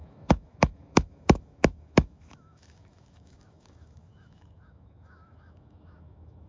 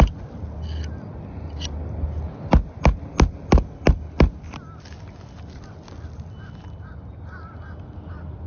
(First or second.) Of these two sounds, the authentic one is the second